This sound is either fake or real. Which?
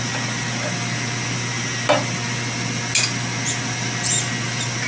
real